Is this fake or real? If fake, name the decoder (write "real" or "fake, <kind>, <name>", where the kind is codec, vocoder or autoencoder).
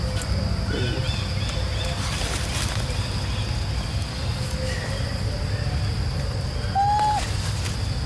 real